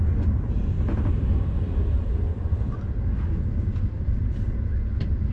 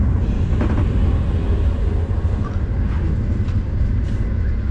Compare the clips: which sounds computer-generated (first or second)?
first